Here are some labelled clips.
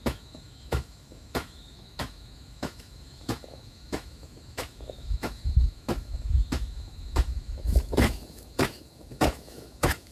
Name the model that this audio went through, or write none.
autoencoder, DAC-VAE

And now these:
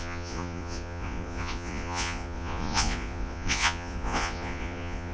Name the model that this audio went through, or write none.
vocoder, Vocos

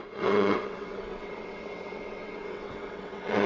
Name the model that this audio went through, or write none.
vocoder, WaveNeXt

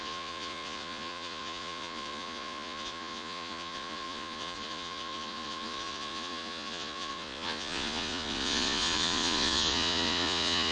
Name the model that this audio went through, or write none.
vocoder, Vocos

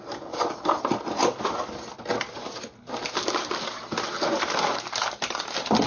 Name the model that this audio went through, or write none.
none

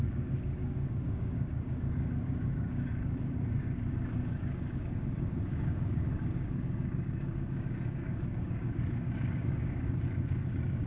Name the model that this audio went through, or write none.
codec, DAC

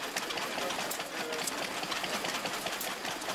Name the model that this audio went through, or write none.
none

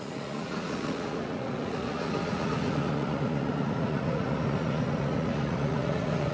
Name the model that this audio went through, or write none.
vocoder, Vocos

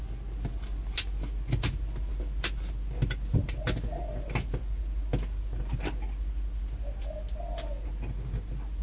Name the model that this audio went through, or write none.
none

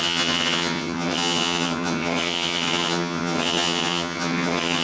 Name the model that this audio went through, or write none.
vocoder, HiFi-GAN